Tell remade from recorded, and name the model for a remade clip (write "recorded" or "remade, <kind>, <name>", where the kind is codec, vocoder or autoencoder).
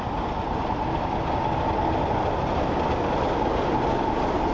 recorded